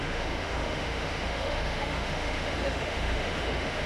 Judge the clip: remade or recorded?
remade